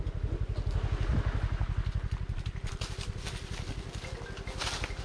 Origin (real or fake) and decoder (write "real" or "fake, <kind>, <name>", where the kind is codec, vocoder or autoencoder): real